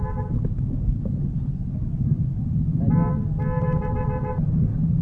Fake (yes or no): no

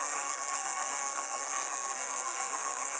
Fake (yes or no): yes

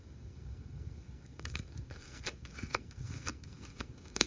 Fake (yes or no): yes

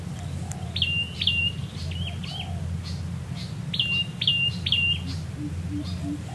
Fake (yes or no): no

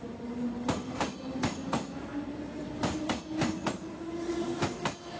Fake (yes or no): no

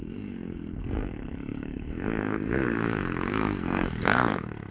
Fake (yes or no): yes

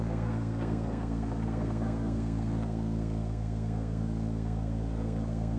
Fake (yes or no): yes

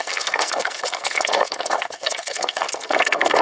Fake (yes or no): yes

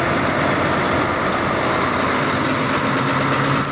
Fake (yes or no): no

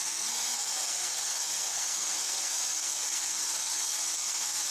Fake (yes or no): yes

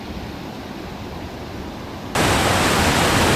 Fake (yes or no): no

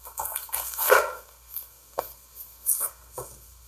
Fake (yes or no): yes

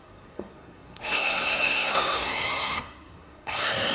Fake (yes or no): yes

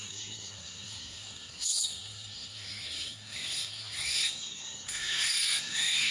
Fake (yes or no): yes